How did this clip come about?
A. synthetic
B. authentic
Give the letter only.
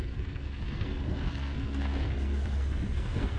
A